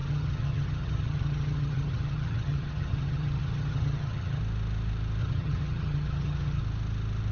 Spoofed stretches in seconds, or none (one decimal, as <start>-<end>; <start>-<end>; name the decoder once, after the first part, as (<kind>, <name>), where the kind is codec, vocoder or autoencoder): 0.0-4.4 (vocoder, HiFi-GAN); 5.2-6.6